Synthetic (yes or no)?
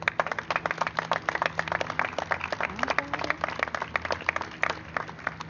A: no